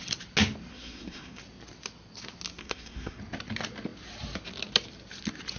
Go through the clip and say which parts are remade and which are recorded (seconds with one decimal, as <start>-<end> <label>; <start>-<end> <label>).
0.0-0.7 recorded; 0.7-1.4 remade; 1.4-2.6 recorded; 2.6-3.2 remade; 3.2-5.6 recorded